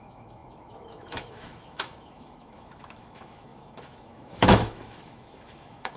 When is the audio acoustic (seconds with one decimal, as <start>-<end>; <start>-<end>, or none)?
none